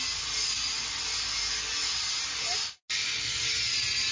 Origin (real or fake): real